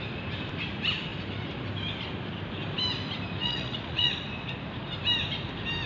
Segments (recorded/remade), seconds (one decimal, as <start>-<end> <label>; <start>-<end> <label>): 0.0-3.4 recorded; 3.4-4.1 remade; 4.1-5.9 recorded

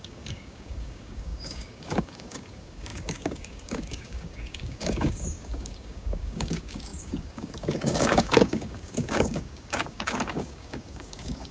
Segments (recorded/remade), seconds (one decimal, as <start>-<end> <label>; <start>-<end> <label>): 0.0-11.5 remade

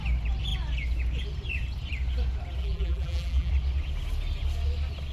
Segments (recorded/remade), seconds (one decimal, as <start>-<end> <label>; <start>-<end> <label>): 0.0-2.6 recorded; 2.6-3.5 remade; 3.5-5.1 recorded